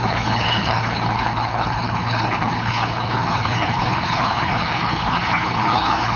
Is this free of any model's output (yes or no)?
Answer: no